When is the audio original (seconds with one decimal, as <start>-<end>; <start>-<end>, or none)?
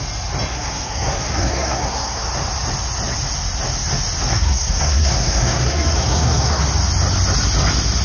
0.0-0.5; 2.2-4.3; 6.6-8.0